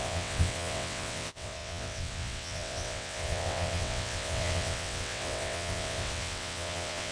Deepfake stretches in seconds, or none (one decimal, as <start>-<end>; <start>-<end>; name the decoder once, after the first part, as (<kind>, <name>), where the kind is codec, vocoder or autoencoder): 0.0-7.1 (vocoder, WaveNeXt)